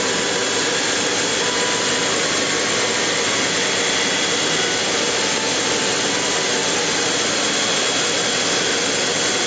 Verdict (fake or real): real